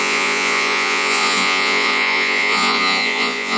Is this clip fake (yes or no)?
yes